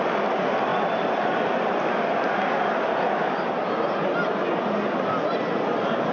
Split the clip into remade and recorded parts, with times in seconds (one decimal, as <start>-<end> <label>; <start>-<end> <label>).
0.0-6.1 recorded